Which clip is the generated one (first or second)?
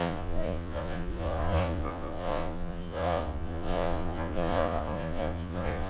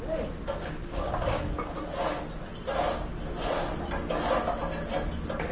first